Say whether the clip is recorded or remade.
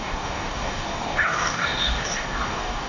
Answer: remade